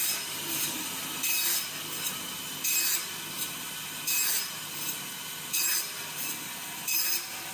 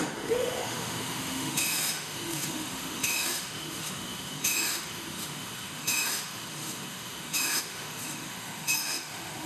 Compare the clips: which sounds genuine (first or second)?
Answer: first